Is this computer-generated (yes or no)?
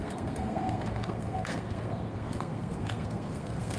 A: yes